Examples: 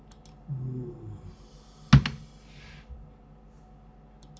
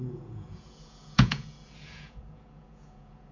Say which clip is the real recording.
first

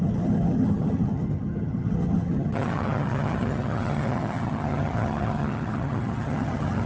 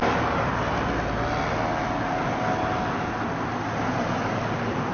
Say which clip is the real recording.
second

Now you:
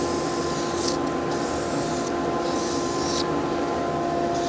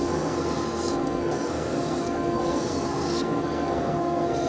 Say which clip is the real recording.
first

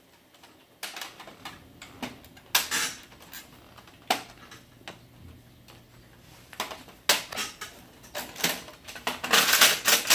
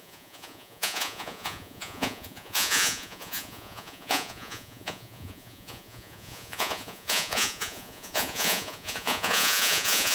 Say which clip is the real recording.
first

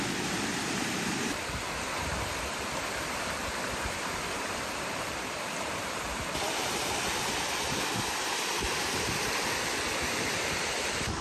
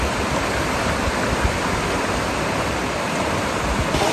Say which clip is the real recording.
second